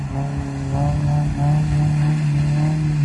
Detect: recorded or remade recorded